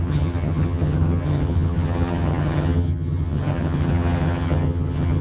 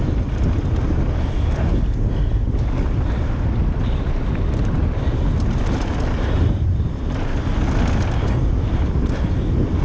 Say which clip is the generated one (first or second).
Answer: first